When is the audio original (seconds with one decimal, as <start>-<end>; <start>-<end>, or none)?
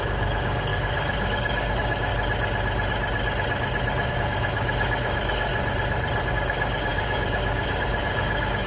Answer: 2.1-4.1; 5.5-6.3